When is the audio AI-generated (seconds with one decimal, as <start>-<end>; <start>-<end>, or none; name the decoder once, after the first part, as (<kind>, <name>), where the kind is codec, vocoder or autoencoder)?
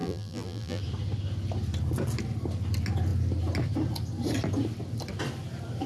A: 0.0-0.8 (vocoder, BigVGAN v2)